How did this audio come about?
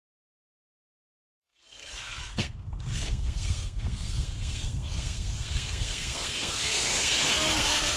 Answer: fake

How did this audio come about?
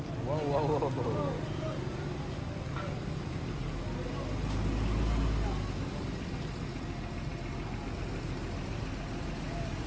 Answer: real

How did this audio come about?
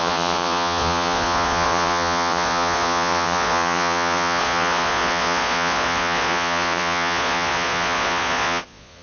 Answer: fake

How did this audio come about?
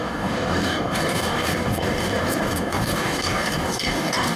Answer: fake